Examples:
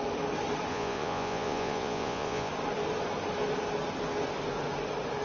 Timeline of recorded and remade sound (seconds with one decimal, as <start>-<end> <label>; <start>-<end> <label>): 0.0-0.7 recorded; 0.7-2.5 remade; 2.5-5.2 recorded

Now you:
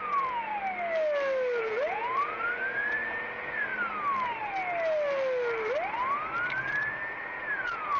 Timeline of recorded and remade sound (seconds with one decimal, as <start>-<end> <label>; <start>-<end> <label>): 0.0-0.5 remade; 0.5-1.6 recorded; 1.6-3.7 remade; 3.7-6.6 recorded; 6.6-8.0 remade

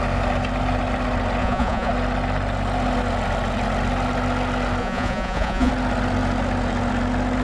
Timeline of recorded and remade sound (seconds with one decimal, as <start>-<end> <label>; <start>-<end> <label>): 0.0-1.4 recorded; 1.4-1.9 remade; 1.9-4.8 recorded; 4.8-5.7 remade; 5.7-7.4 recorded

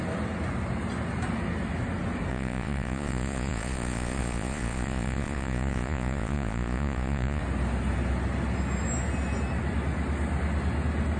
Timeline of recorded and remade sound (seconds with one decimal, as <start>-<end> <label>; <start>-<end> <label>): 0.0-2.3 recorded; 2.3-7.4 remade; 7.4-11.2 recorded

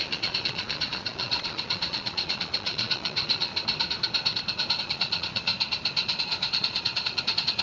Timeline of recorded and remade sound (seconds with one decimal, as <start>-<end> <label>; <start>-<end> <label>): 0.0-3.5 remade; 3.5-4.8 recorded; 4.8-5.5 remade; 5.5-6.2 recorded; 6.2-7.6 remade

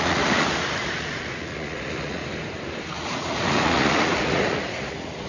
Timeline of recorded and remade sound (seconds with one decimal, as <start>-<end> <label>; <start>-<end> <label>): 0.0-2.2 remade; 2.2-2.9 recorded; 2.9-5.3 remade